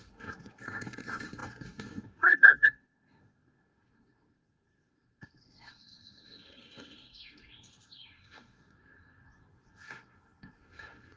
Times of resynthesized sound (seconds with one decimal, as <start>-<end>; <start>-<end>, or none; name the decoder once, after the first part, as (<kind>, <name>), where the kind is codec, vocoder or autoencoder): 0.0-11.2 (codec, SNAC)